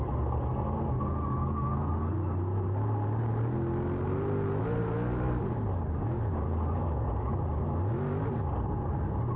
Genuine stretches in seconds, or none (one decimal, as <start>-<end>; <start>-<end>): 0.0-1.4; 1.9-9.4